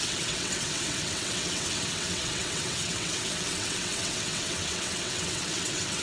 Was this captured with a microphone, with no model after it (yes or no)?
no